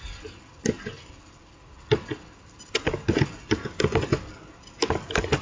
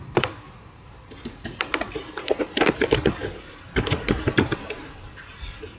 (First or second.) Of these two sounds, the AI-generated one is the second